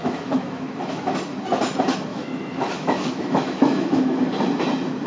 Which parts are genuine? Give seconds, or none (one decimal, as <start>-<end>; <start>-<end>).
1.1-2.1; 4.2-5.1